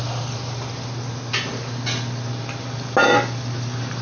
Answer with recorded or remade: recorded